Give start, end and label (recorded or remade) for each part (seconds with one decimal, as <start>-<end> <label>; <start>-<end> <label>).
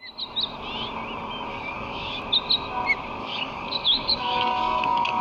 0.0-1.5 recorded; 1.5-2.2 remade; 2.2-3.2 recorded; 3.2-5.2 remade